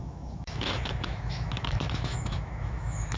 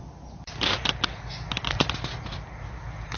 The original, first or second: second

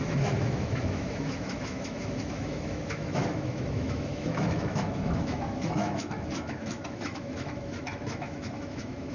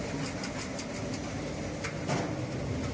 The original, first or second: second